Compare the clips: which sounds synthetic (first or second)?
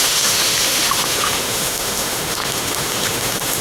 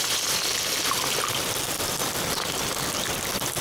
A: first